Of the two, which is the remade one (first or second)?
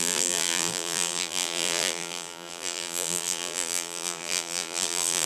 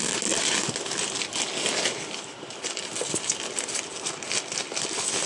first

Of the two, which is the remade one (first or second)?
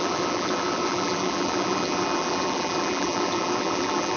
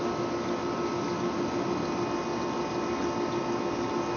first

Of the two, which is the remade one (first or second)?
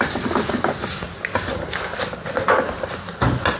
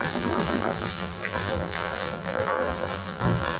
second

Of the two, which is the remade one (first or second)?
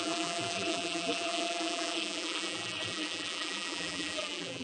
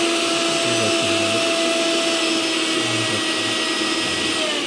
first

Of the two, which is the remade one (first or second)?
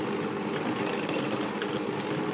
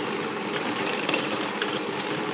second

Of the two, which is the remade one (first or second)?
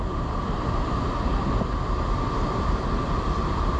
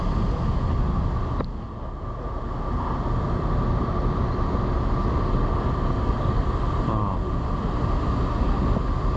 first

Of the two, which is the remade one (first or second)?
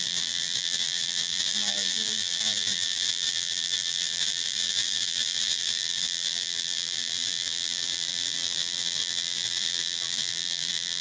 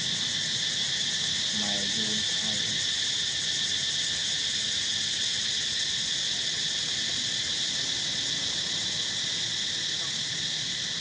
first